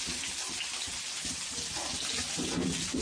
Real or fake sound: real